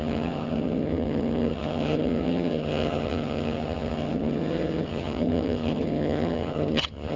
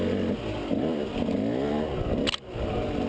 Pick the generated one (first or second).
first